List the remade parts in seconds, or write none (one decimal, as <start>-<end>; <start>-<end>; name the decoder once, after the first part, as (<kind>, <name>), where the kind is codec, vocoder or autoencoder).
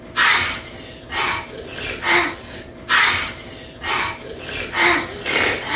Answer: none